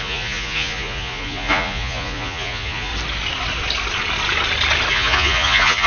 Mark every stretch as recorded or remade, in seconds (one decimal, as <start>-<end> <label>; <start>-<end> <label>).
0.0-2.9 remade; 2.9-4.9 recorded; 4.9-5.9 remade